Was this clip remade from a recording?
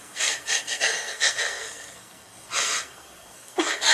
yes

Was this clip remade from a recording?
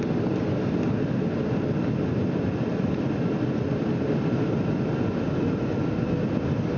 yes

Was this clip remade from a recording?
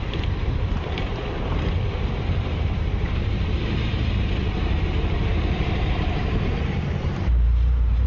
yes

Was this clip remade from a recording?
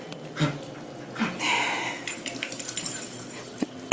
no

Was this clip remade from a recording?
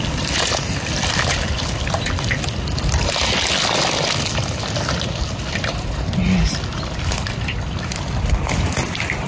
no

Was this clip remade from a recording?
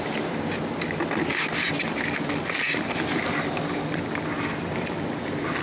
no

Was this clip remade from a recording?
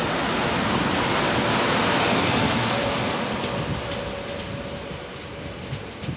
no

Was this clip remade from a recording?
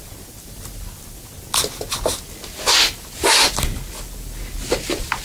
no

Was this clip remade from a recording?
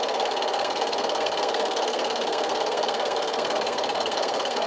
yes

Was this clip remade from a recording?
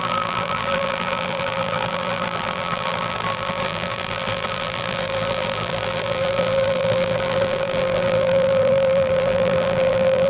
yes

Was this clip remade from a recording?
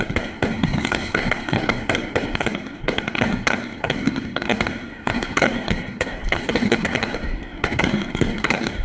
yes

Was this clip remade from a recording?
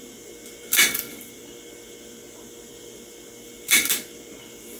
yes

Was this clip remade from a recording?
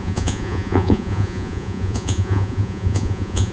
yes